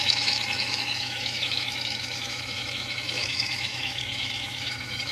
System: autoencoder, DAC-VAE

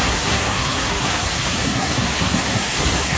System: codec, SNAC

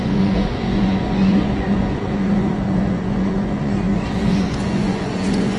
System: vocoder, Vocos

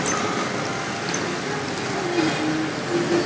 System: none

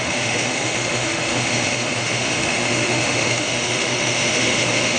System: autoencoder, DAC-VAE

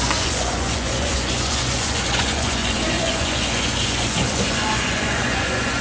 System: vocoder, Vocos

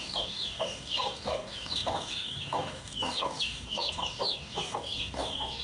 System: codec, DAC